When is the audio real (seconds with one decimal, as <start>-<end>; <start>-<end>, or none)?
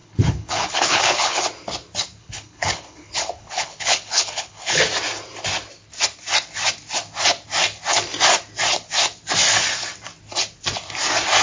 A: 1.4-2.2; 4.8-11.4